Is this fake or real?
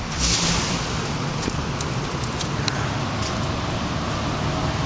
real